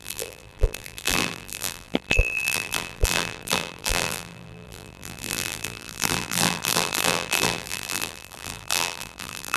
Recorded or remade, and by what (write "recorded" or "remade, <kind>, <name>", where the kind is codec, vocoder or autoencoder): remade, vocoder, BigVGAN v2